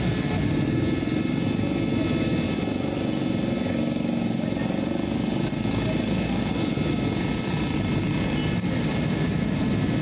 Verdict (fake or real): real